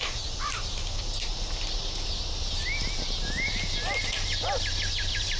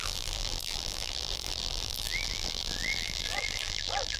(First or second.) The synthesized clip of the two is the second